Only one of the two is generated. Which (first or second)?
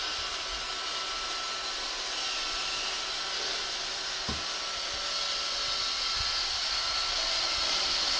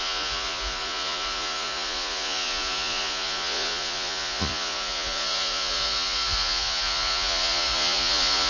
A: second